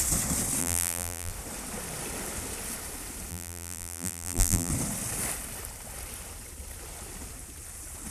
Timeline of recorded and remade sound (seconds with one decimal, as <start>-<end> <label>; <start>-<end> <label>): 0.0-0.6 recorded; 0.6-1.3 remade; 1.3-3.3 recorded; 3.3-4.7 remade; 4.7-8.1 recorded